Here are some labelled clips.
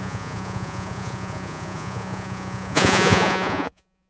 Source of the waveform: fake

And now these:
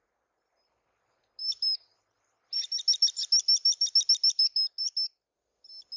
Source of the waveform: real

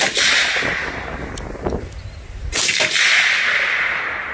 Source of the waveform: real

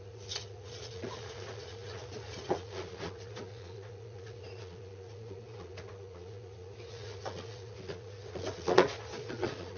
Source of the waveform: fake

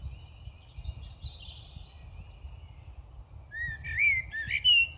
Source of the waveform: real